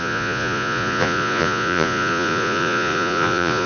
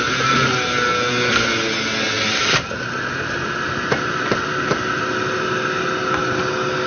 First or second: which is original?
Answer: second